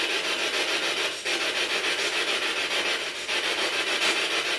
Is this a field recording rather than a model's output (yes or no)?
yes